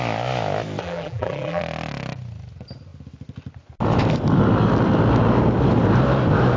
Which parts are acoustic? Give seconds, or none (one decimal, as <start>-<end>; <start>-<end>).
0.0-0.8; 1.6-6.6